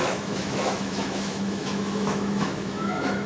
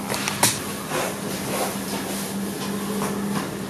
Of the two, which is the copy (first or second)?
first